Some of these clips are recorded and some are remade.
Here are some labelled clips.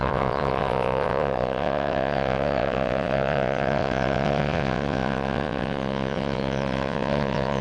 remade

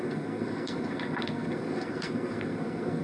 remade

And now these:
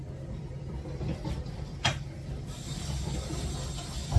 recorded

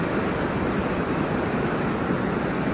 recorded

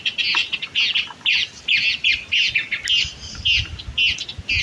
recorded